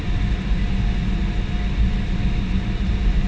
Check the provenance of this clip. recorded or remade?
recorded